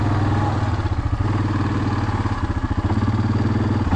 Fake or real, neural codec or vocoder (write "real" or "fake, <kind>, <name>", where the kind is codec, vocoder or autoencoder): real